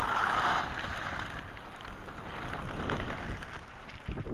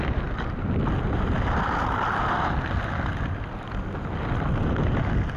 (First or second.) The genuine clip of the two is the second